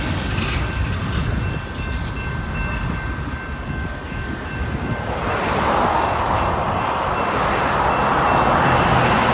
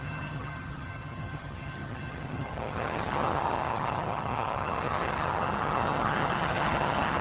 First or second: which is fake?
second